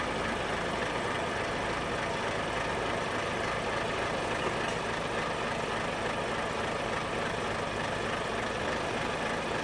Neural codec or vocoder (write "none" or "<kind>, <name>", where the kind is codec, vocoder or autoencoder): none